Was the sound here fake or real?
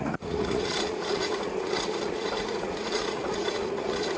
fake